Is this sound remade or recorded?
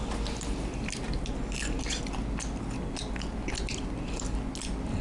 recorded